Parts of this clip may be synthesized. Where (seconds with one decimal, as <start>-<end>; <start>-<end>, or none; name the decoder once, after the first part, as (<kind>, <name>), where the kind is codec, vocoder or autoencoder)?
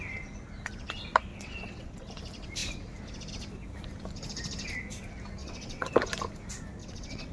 1.3-2.1 (vocoder, WaveNeXt); 5.4-5.9; 6.8-7.3